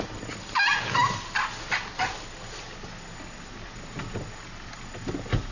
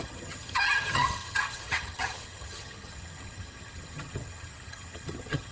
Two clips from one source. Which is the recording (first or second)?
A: first